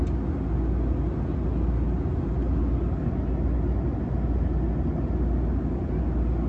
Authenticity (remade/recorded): recorded